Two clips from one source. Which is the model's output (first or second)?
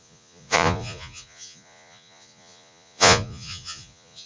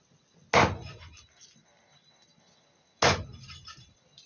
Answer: first